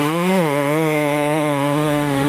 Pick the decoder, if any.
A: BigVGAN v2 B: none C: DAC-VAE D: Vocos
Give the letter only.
C